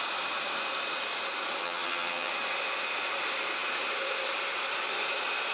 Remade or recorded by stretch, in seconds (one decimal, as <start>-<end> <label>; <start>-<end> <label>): 0.0-1.6 recorded; 1.6-2.3 remade; 2.3-5.5 recorded